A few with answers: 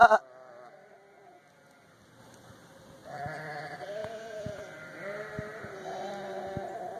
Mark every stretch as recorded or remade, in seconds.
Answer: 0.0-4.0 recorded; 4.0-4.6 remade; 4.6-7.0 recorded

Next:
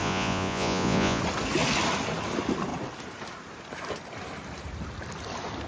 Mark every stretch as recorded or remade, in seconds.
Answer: 0.0-1.2 remade; 1.2-5.7 recorded

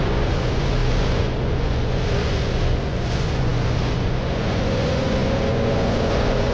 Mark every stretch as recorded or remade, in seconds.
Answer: 0.0-6.5 remade

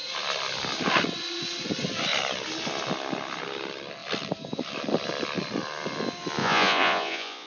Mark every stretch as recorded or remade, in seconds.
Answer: 0.0-6.4 recorded; 6.4-7.5 remade

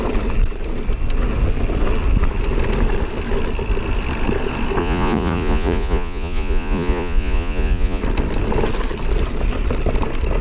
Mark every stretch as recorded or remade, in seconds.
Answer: 0.0-4.8 recorded; 4.8-8.0 remade; 8.0-10.4 recorded

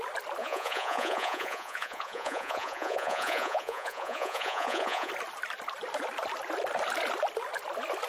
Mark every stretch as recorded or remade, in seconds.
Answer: 0.0-0.4 recorded; 0.4-5.1 remade; 5.1-8.1 recorded

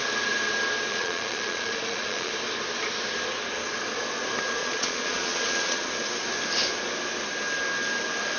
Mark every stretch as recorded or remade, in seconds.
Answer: 0.0-0.9 recorded; 0.9-2.3 remade; 2.3-4.6 recorded; 4.6-5.9 remade; 5.9-8.4 recorded

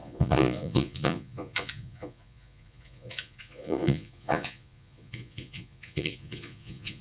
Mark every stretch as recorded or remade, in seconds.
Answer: 0.0-7.0 remade